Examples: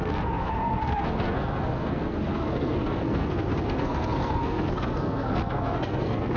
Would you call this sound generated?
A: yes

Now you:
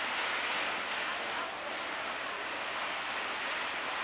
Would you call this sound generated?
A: no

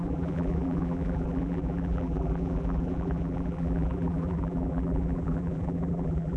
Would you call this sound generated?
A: yes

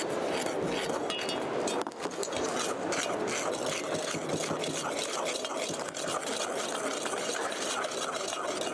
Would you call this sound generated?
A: no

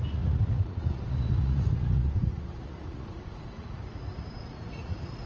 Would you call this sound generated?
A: yes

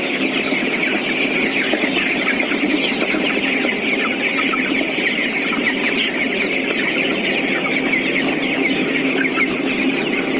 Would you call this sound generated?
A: no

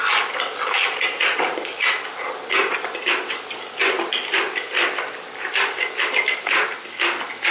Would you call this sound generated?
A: no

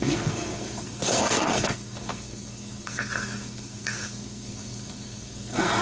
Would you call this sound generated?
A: yes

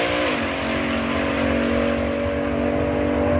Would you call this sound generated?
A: no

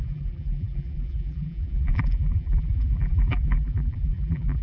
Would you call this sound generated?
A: yes